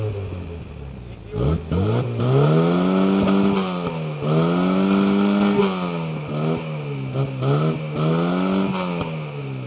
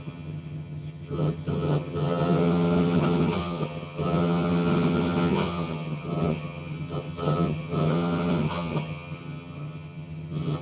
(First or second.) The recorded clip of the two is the first